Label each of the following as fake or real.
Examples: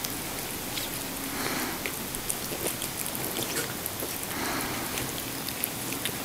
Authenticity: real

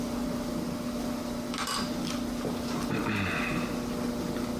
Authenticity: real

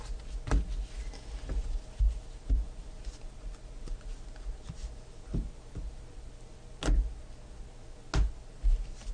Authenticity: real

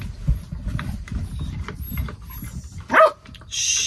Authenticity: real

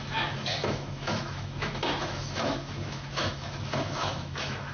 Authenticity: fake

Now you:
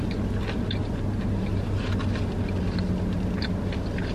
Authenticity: real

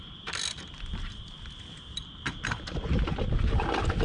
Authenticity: real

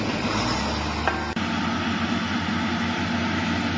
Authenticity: real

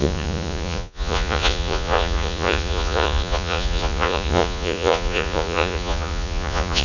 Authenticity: fake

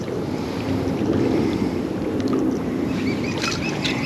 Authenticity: fake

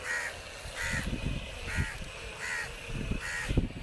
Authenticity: real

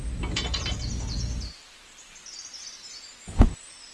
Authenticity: real